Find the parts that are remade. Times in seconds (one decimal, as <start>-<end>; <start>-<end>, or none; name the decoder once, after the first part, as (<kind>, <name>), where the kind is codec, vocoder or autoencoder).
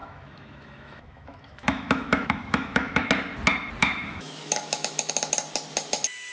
0.0-3.1 (autoencoder, DAC-VAE); 3.8-5.1